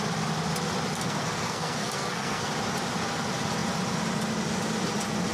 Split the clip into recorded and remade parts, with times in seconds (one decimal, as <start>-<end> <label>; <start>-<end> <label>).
0.0-0.9 recorded; 0.9-2.5 remade; 2.5-5.3 recorded

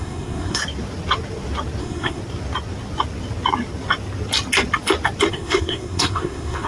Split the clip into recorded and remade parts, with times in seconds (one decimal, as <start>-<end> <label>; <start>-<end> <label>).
0.0-0.6 remade; 0.6-1.8 recorded; 1.8-2.2 remade; 2.2-5.3 recorded; 5.3-6.7 remade

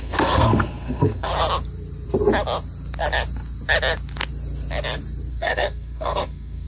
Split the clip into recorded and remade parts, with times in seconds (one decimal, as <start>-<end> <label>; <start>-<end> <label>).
0.0-1.3 remade; 1.3-5.3 recorded; 5.3-6.7 remade

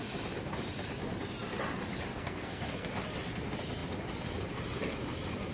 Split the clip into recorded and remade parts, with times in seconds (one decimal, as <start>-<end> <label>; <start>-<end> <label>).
0.0-2.1 recorded; 2.1-2.9 remade; 2.9-5.5 recorded

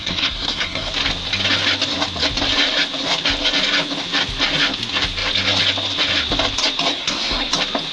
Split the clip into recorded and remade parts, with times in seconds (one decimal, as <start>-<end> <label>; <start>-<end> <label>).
0.0-0.9 remade; 0.9-6.9 recorded; 6.9-7.5 remade; 7.5-7.9 recorded

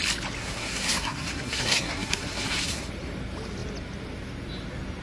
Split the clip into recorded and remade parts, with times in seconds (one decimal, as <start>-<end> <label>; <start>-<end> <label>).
0.0-0.4 recorded; 0.4-2.9 remade; 2.9-5.0 recorded

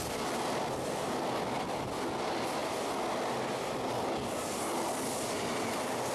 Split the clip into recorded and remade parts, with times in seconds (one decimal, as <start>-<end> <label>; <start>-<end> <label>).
0.0-6.1 recorded

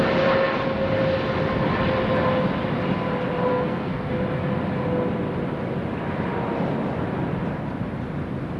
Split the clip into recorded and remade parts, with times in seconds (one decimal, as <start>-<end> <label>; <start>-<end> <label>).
0.0-3.5 recorded; 3.5-4.1 remade; 4.1-8.6 recorded